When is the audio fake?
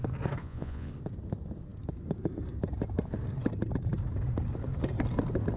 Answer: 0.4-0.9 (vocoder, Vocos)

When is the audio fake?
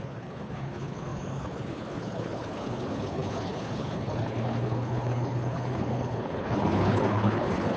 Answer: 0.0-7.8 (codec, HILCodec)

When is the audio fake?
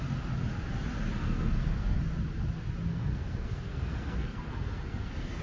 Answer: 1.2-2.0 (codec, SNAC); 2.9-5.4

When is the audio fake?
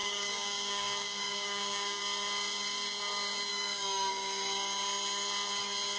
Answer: 0.0-2.0 (codec, DAC); 3.5-4.1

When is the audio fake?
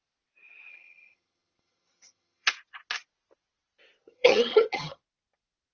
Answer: 0.7-2.5 (vocoder, HiFi-GAN); 4.1-5.0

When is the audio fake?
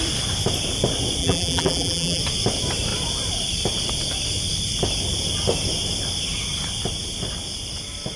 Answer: 1.2-2.2 (vocoder, BigVGAN v2)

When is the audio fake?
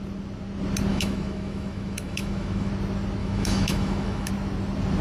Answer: 0.9-2.7 (autoencoder, DAC-VAE); 3.2-4.3